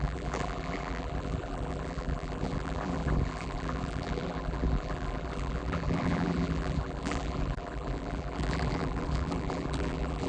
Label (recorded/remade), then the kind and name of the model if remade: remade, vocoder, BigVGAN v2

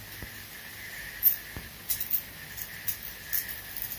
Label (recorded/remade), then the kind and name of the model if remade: recorded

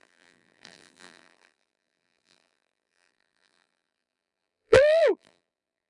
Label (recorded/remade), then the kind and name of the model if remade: remade, vocoder, BigVGAN v2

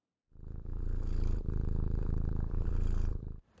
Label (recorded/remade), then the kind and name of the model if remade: remade, vocoder, BigVGAN v2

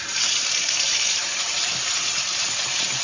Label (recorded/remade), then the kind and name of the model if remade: remade, vocoder, BigVGAN v2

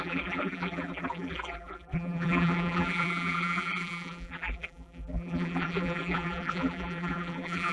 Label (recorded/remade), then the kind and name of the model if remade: remade, vocoder, BigVGAN v2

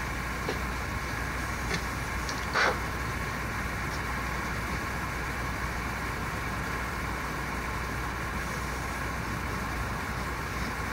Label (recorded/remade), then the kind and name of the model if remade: recorded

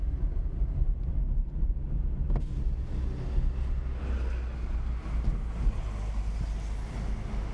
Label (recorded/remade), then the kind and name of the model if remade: recorded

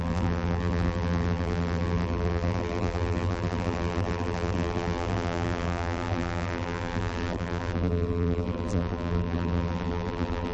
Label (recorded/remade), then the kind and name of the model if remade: remade, vocoder, BigVGAN v2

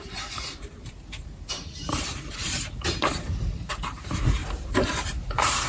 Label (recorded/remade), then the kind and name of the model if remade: remade, vocoder, BigVGAN v2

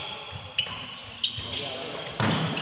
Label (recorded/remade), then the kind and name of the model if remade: recorded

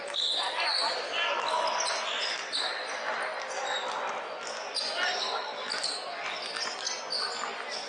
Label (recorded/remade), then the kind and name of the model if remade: recorded